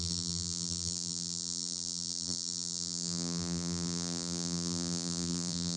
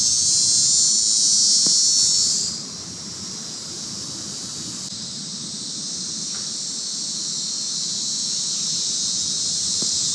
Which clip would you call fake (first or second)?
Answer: first